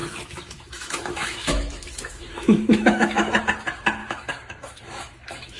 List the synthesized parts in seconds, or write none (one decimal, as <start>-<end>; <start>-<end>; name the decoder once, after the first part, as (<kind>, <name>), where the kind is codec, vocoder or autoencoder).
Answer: 0.0-3.4 (autoencoder, DAC-VAE); 4.0-5.6